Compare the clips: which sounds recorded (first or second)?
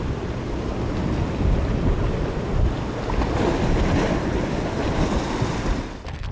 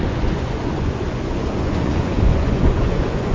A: first